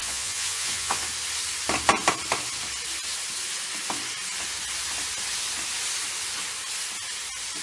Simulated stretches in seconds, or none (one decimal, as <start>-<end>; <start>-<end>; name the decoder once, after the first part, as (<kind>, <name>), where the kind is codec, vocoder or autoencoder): 0.0-1.0 (vocoder, Vocos)